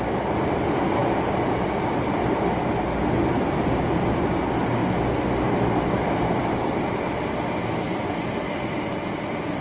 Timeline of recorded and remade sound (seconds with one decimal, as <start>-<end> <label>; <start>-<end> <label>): 0.0-9.6 recorded